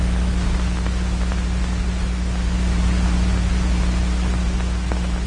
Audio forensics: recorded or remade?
recorded